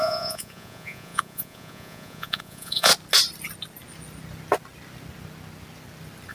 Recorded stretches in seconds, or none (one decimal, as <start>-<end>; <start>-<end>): 2.9-6.3